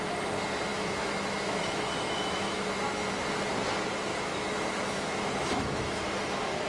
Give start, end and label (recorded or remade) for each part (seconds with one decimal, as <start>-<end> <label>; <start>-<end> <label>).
0.0-0.7 recorded; 0.7-2.7 remade; 2.7-4.1 recorded; 4.1-6.0 remade; 6.0-6.7 recorded